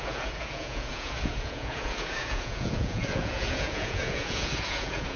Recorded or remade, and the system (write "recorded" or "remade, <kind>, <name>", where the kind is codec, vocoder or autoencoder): remade, vocoder, Vocos